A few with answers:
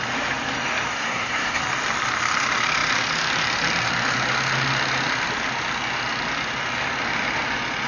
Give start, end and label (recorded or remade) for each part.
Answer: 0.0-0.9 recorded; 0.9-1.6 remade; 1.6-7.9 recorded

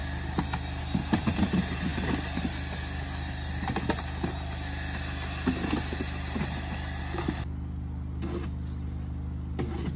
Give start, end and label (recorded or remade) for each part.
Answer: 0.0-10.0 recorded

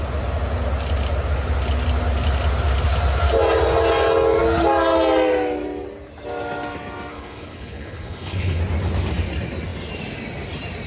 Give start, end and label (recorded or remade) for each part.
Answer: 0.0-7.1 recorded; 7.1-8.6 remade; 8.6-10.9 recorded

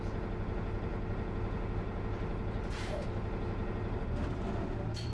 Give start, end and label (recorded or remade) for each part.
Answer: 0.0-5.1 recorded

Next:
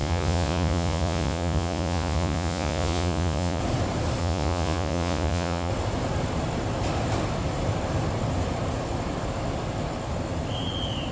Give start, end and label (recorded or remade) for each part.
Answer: 0.0-3.6 remade; 3.6-4.2 recorded; 4.2-5.7 remade; 5.7-11.1 recorded

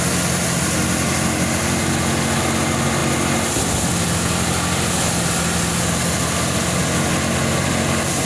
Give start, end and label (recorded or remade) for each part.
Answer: 0.0-8.3 recorded